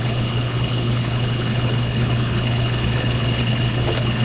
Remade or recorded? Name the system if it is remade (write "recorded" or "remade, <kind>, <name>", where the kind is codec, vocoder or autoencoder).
remade, codec, HILCodec